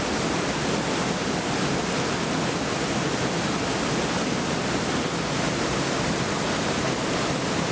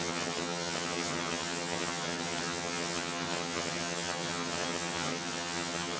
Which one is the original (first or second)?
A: first